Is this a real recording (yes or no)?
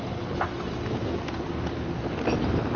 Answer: yes